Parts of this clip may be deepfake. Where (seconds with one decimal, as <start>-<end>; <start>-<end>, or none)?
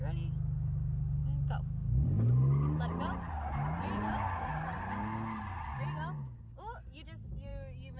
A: none